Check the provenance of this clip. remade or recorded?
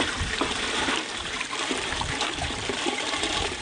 remade